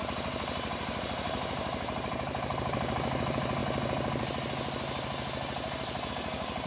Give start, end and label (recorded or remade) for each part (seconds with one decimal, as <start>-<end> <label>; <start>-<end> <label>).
0.0-1.0 recorded; 1.0-3.6 remade; 3.6-6.1 recorded; 6.1-6.7 remade